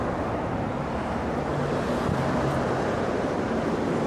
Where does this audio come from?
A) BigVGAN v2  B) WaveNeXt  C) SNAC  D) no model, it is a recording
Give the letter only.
A